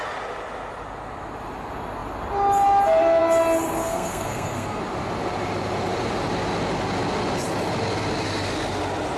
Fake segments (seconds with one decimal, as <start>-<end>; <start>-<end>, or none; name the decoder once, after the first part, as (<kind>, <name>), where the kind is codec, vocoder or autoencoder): 3.8-4.8 (codec, SNAC)